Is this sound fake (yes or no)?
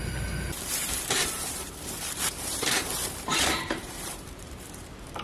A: yes